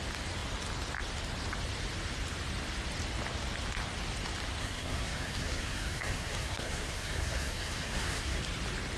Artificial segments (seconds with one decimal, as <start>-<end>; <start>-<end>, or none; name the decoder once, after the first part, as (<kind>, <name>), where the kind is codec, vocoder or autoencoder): 4.6-8.4 (codec, SNAC)